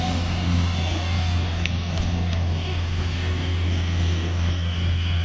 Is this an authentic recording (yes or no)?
no